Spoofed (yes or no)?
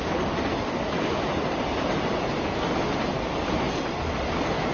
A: no